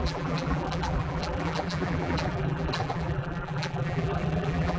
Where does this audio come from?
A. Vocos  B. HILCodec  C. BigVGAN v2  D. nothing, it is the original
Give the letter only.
C